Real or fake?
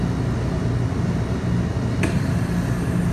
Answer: real